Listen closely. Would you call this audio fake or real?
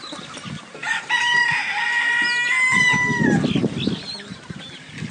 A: real